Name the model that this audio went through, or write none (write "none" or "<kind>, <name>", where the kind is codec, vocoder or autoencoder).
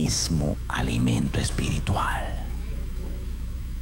autoencoder, DAC-VAE